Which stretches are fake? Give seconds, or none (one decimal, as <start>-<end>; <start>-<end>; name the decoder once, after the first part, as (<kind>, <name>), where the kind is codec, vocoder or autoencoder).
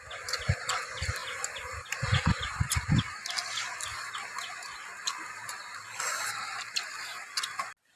none